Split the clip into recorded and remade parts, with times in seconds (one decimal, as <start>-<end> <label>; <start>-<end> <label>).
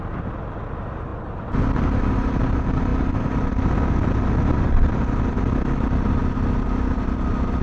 0.0-7.6 recorded